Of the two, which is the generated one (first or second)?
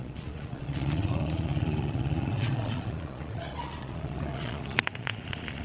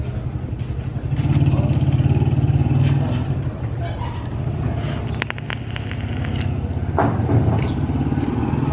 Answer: first